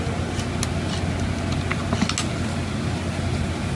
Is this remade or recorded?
recorded